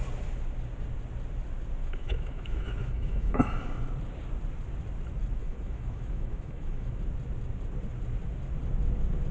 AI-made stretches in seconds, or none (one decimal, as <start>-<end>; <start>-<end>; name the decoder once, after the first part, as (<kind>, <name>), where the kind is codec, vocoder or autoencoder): 1.8-3.4 (autoencoder, DAC-VAE); 5.4-7.0